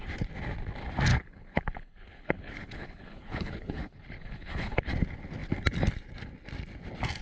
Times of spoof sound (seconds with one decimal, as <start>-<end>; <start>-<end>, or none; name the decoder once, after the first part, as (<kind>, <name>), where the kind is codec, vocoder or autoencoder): 1.1-4.9 (codec, HILCodec)